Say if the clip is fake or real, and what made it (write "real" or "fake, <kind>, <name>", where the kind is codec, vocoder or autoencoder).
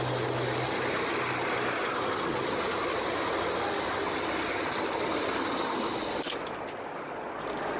real